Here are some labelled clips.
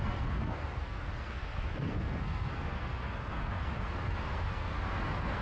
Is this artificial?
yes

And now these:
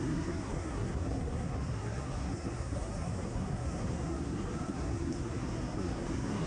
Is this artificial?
yes